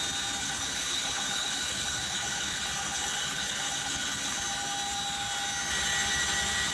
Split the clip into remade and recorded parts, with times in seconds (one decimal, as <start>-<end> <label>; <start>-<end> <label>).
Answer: 0.0-0.4 recorded; 0.4-4.4 remade; 4.4-6.7 recorded